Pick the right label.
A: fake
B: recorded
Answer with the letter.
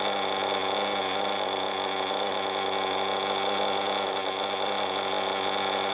B